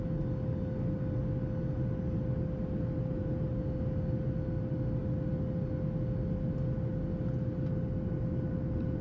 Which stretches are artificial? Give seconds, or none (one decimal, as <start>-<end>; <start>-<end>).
none